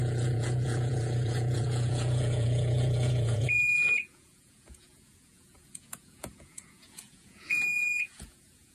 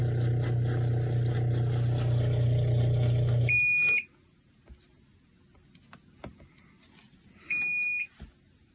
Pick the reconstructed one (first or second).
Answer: first